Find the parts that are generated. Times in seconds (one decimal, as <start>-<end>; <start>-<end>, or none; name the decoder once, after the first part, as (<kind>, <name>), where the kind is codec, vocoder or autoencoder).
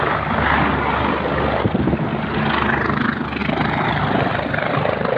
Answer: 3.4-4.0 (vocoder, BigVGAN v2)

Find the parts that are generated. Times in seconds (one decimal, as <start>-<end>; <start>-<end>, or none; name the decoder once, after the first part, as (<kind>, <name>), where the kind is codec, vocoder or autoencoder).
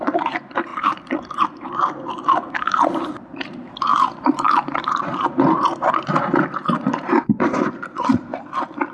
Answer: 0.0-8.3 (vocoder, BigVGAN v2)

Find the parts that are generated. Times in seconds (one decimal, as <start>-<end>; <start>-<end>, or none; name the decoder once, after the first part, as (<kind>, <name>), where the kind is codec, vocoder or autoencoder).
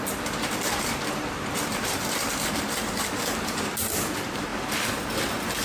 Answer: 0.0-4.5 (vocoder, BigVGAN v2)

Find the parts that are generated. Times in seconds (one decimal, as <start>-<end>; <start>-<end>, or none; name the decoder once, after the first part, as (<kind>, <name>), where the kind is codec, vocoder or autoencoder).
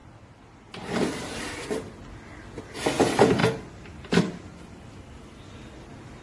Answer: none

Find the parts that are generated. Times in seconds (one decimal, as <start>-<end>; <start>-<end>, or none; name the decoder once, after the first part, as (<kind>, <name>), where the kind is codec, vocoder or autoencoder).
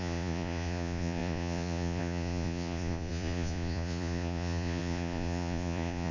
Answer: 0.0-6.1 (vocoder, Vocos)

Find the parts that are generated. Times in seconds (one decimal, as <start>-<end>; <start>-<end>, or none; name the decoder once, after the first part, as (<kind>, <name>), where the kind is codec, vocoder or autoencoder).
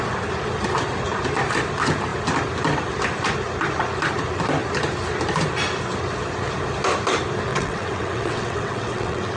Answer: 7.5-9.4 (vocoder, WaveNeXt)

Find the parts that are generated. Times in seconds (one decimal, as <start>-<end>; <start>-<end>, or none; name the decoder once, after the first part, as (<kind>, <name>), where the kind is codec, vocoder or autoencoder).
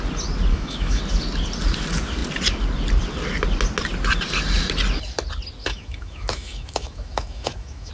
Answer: 0.5-1.0 (autoencoder, DAC-VAE); 5.6-7.9